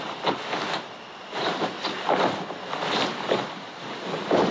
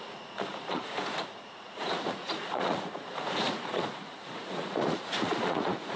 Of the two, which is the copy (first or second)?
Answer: second